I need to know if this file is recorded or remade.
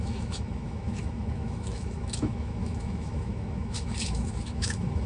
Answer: remade